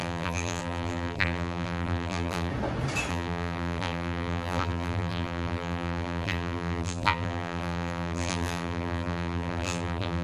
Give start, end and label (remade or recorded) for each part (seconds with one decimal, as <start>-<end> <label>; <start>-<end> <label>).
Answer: 0.0-2.5 remade; 2.5-3.1 recorded; 3.1-10.2 remade